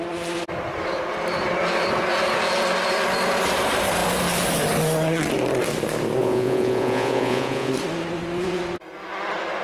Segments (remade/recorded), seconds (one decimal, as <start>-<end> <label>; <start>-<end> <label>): 0.0-6.2 recorded; 6.2-7.7 remade; 7.7-9.6 recorded